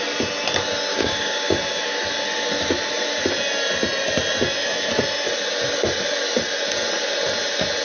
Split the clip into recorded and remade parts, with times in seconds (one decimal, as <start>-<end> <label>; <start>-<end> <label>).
0.0-0.9 recorded; 0.9-1.5 remade; 1.5-7.8 recorded